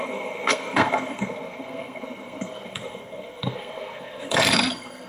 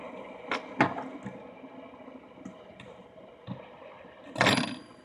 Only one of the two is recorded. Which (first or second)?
second